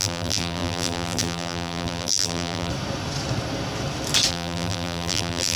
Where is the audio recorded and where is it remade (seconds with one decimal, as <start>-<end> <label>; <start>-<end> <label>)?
0.0-2.7 remade; 2.7-4.3 recorded; 4.3-5.6 remade